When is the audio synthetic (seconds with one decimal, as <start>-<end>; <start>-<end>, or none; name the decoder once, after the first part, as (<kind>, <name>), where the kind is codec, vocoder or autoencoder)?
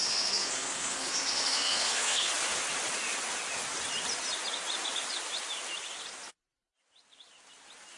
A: 0.0-2.3 (codec, SNAC)